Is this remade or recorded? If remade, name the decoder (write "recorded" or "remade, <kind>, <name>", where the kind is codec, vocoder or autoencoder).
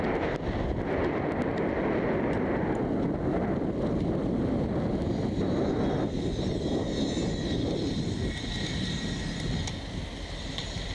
recorded